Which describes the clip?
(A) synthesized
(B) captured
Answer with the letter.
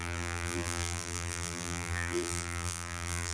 A